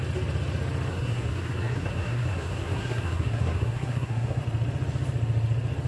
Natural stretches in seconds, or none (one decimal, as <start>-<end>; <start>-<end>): 0.0-0.9; 4.4-5.9